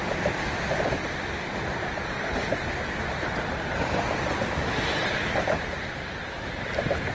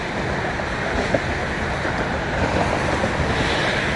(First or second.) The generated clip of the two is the first